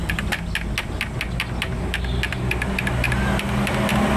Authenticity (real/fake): real